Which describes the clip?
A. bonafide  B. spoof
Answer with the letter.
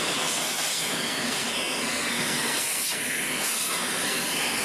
B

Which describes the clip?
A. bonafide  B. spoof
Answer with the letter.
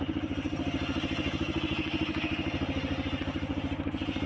A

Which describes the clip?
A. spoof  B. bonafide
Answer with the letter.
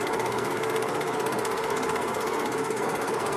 A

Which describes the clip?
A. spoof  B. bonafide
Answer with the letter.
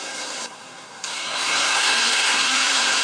A